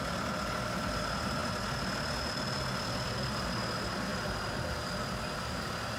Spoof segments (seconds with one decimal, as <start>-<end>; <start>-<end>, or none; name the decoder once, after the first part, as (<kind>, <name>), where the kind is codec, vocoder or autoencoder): none